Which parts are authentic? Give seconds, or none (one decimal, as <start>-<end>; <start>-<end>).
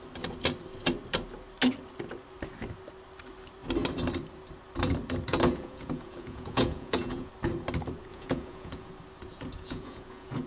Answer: 0.0-5.3; 7.3-8.1; 8.9-9.3